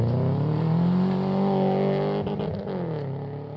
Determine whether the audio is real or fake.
real